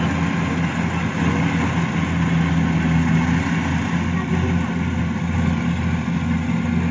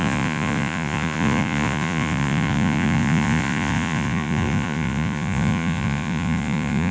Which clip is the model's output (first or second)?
second